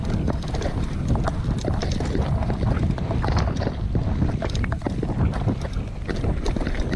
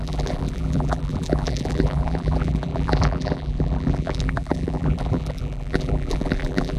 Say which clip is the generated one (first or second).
second